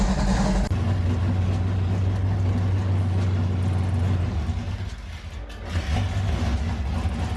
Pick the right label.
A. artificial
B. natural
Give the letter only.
B